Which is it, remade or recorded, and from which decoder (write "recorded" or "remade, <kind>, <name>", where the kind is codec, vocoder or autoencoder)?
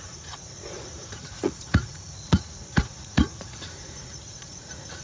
remade, vocoder, Vocos